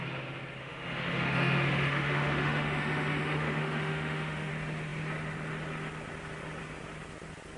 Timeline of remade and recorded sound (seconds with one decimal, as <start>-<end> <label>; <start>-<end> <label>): 0.0-0.6 recorded; 0.6-4.5 remade; 4.5-7.6 recorded